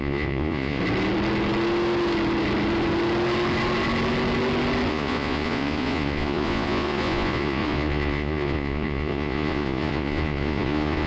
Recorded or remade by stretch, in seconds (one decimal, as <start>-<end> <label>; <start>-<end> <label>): 0.0-0.8 remade; 0.8-4.9 recorded; 4.9-11.1 remade